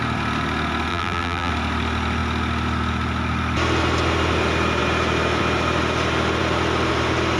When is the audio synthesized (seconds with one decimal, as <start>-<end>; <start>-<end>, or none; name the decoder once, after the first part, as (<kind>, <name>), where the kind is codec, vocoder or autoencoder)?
0.9-1.5 (vocoder, BigVGAN v2)